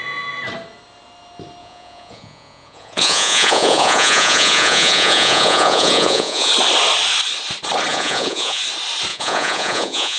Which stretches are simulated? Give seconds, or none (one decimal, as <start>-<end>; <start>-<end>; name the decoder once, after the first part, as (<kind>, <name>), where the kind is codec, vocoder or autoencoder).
1.6-6.5 (vocoder, Vocos); 7.9-8.6; 9.1-10.2